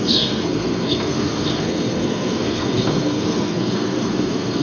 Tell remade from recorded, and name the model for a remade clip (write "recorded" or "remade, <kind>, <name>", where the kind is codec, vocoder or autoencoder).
remade, codec, SNAC